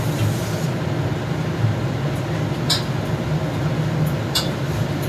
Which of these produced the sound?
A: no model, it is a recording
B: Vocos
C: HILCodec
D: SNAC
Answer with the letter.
A